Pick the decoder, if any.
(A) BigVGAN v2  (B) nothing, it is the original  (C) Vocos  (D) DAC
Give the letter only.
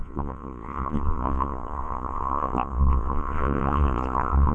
C